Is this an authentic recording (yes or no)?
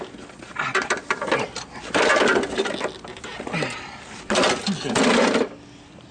yes